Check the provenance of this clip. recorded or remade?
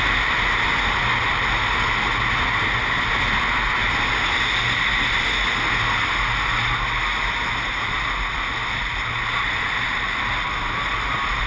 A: recorded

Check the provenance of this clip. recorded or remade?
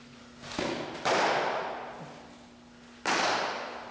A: recorded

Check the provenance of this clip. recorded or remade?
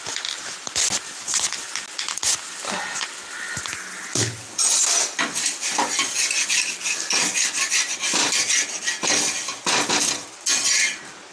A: recorded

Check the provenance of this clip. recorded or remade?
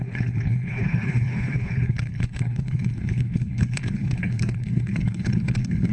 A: remade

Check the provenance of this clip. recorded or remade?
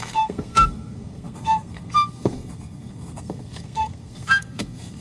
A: remade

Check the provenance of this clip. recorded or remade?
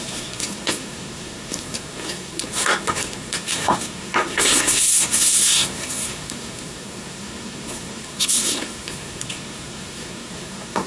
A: remade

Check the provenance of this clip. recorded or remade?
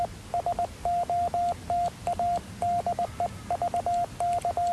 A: recorded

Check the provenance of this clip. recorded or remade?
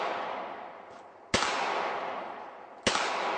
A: recorded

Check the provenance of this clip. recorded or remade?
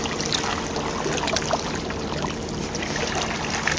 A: recorded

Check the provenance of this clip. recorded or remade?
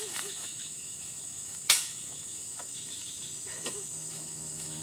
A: remade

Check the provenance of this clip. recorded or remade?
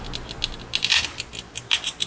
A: recorded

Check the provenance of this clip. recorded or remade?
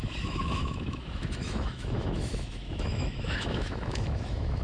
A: remade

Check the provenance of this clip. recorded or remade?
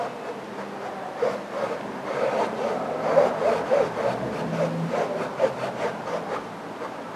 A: recorded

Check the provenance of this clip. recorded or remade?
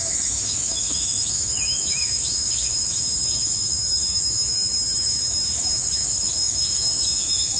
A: remade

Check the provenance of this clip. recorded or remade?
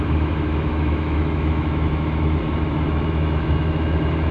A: remade